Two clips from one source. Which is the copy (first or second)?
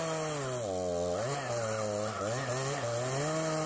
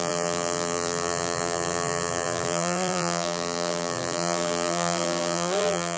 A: second